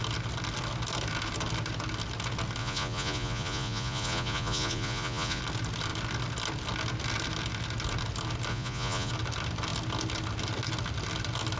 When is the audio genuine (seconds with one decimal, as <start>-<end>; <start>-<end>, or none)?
0.0-2.6; 5.4-8.5; 9.1-11.6